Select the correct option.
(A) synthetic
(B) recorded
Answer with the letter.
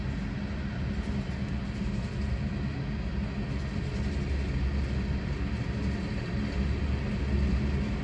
B